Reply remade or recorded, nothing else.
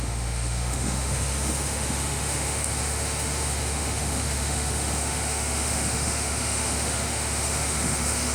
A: remade